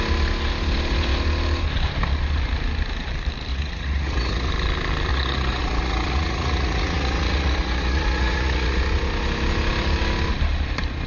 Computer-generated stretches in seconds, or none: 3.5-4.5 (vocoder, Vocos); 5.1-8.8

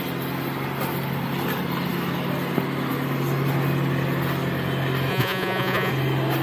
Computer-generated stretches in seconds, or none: 5.1-5.9 (vocoder, Vocos)

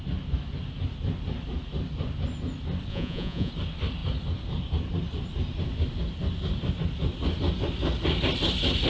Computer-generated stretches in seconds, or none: 2.9-3.5 (vocoder, Vocos)

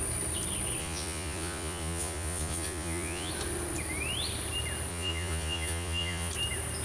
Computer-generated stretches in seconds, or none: 0.8-3.3 (vocoder, Vocos); 4.9-6.3

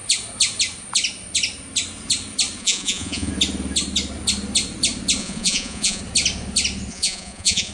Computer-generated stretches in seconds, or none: 2.6-3.3 (vocoder, Vocos); 5.2-6.0; 6.9-7.7

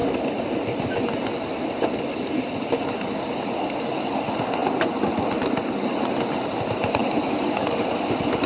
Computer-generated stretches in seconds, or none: none

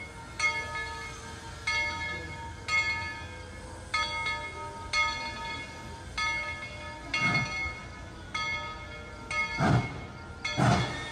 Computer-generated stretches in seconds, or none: none

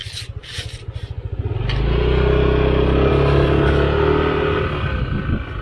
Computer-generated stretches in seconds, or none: none